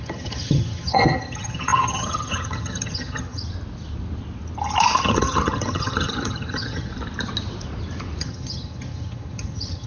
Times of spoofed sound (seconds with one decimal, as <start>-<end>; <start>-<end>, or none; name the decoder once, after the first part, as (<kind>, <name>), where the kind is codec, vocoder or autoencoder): 0.0-3.4 (vocoder, HiFi-GAN); 5.0-6.9; 8.2-9.9